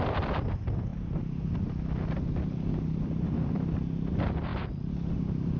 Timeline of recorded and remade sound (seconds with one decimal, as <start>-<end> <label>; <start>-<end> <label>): 0.0-0.9 remade; 0.9-4.1 recorded; 4.1-4.5 remade; 4.5-5.6 recorded